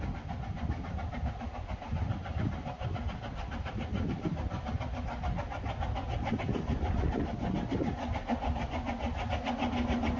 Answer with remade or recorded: recorded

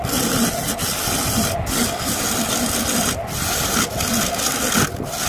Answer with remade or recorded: recorded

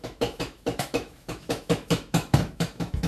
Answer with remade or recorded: remade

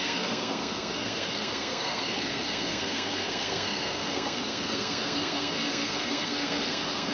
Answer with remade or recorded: remade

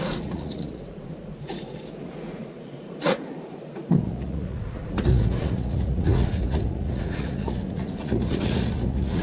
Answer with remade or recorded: remade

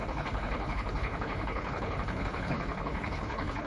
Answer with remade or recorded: remade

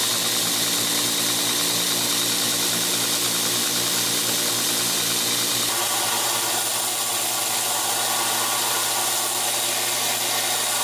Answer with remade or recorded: recorded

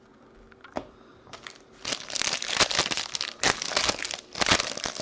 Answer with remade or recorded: recorded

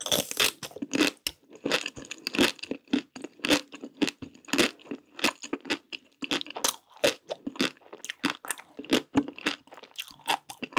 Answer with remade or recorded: recorded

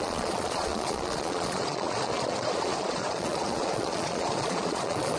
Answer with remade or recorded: remade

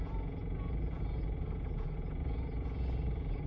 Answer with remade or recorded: remade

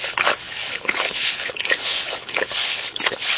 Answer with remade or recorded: remade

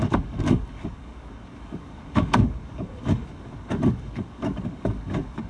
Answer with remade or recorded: remade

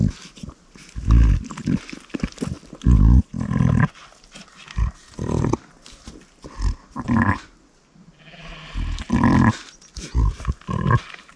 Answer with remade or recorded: recorded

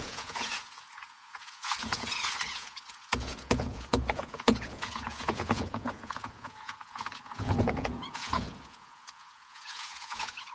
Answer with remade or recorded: remade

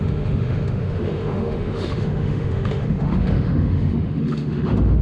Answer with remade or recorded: remade